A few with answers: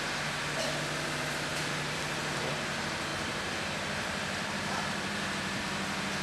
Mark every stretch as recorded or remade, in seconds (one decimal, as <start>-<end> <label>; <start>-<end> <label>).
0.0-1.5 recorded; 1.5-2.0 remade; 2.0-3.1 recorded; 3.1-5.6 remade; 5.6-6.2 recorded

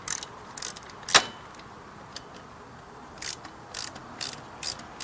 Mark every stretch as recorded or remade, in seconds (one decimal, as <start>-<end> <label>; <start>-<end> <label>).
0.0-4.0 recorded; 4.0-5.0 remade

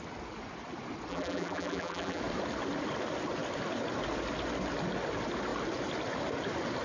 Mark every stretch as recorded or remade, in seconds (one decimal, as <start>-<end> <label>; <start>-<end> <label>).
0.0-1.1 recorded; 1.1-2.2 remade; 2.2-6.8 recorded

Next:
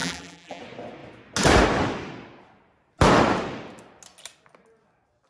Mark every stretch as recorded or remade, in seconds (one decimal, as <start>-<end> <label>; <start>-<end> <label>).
0.0-0.6 remade; 0.6-5.3 recorded

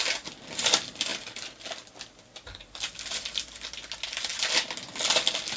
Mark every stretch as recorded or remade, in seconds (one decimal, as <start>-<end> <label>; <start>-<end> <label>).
0.0-5.6 recorded